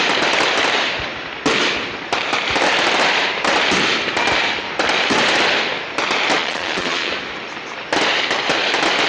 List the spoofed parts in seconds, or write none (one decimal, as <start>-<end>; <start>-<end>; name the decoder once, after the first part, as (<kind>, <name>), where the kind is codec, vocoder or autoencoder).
6.4-7.1 (vocoder, Vocos)